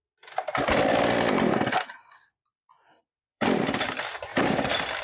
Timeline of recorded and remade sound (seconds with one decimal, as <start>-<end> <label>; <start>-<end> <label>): 0.0-3.0 recorded; 3.0-5.0 remade